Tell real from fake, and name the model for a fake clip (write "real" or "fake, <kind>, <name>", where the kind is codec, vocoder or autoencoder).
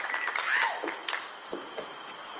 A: fake, vocoder, BigVGAN v2